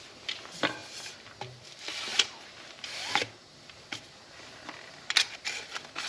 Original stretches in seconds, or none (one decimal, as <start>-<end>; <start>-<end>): 0.0-6.1